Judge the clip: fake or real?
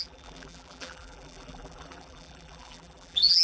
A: fake